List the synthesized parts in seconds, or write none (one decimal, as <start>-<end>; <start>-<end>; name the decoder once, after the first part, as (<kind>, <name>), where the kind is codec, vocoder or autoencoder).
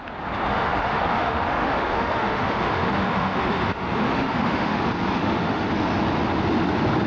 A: 0.5-4.8 (autoencoder, DAC-VAE); 5.2-5.7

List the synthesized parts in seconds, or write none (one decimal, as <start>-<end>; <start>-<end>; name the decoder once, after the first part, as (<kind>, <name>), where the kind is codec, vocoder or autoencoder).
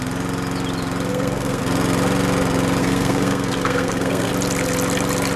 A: 1.1-1.6 (codec, SNAC); 2.8-4.3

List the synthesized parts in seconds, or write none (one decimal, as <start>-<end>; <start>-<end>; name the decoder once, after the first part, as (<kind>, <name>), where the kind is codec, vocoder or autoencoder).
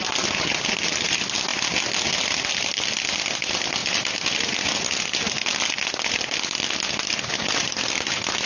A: none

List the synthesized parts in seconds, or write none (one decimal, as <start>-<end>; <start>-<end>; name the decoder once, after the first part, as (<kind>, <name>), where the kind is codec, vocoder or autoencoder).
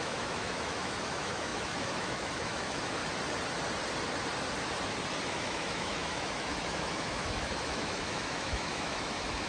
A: 0.0-3.0 (autoencoder, DAC-VAE); 5.3-9.5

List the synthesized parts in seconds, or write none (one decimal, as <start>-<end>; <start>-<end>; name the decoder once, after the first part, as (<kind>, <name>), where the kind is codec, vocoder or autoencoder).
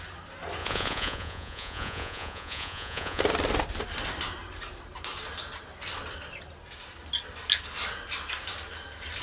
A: 0.6-3.2 (vocoder, Vocos)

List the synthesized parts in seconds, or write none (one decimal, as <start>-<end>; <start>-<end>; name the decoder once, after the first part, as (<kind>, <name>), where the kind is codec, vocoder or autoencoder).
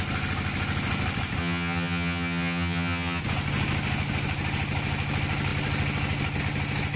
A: 1.4-3.2 (vocoder, HiFi-GAN)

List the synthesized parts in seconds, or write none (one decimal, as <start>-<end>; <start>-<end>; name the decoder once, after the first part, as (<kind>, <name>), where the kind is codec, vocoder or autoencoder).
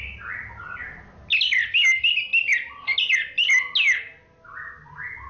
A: none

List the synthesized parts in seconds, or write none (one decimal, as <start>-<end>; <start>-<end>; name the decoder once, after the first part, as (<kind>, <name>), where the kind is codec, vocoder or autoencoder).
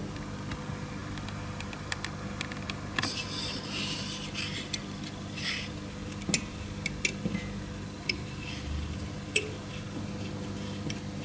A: none